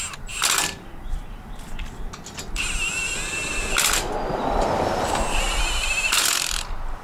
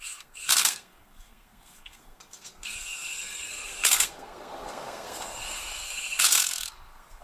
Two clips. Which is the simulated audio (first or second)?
second